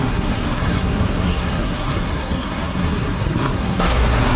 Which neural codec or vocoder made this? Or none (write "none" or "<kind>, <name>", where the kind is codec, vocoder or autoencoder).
codec, SNAC